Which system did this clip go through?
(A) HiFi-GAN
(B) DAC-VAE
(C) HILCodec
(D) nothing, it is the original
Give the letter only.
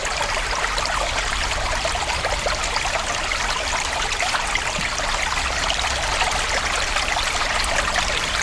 D